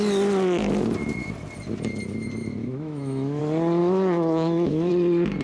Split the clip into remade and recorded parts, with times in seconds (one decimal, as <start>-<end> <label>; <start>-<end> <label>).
0.0-2.6 recorded; 2.6-3.4 remade; 3.4-3.8 recorded; 3.8-4.9 remade; 4.9-5.4 recorded